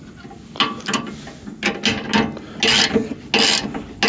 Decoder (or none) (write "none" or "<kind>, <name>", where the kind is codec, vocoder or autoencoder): none